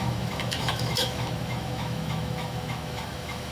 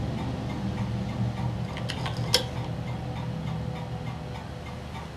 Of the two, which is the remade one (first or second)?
first